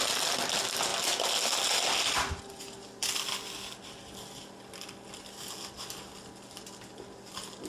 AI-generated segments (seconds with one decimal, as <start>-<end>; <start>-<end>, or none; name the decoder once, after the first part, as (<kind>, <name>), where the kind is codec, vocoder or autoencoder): none